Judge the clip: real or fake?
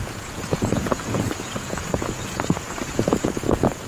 fake